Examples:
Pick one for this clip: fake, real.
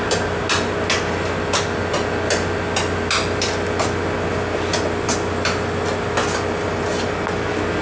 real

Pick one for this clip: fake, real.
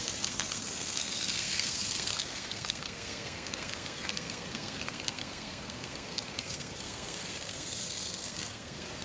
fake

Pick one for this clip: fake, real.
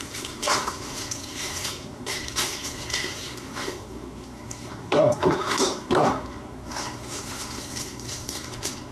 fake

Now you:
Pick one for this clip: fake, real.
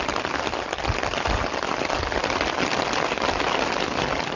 real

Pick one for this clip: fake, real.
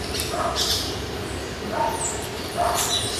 real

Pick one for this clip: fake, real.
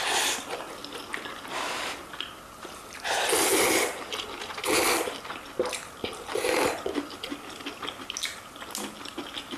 real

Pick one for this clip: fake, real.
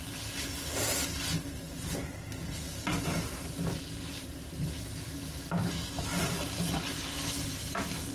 real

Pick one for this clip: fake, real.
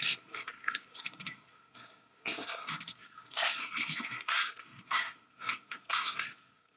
fake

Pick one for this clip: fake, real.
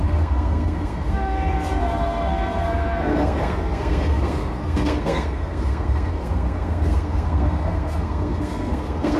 fake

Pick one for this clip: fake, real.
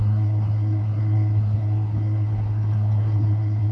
fake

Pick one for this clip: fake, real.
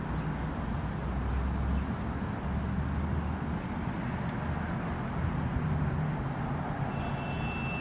real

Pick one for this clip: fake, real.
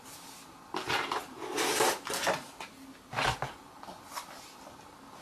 real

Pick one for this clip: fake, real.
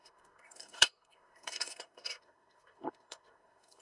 fake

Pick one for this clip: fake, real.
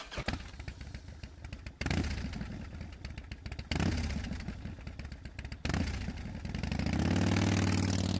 real